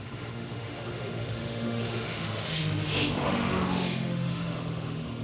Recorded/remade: remade